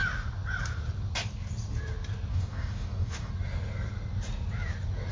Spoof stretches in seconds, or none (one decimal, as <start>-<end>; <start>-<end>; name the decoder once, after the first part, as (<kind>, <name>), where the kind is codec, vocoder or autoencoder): 2.3-3.3 (codec, DAC)